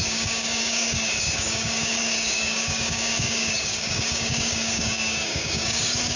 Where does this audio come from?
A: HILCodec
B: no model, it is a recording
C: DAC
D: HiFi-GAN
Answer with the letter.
C